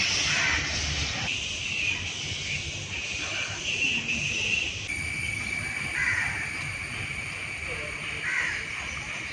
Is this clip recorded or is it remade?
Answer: recorded